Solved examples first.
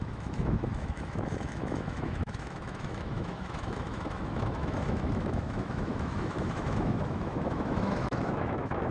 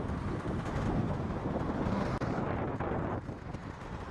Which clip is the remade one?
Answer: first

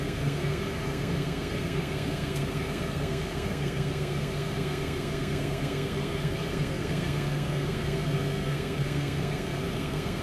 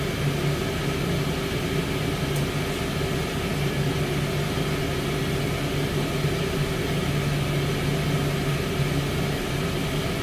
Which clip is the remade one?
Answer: first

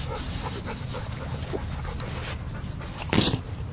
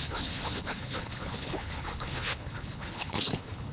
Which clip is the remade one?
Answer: second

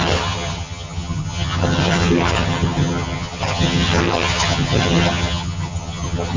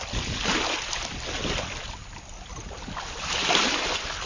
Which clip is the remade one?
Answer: first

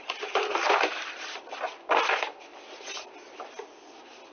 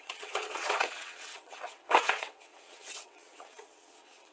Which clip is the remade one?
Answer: second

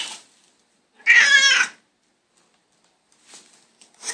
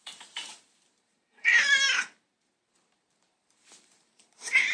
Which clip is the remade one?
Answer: second